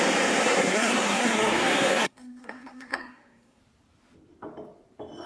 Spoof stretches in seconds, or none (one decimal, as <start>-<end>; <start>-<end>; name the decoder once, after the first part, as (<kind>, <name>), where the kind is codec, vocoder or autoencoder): 0.4-3.6 (codec, SNAC)